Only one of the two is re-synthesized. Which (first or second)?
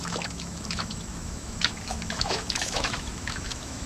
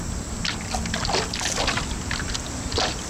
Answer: first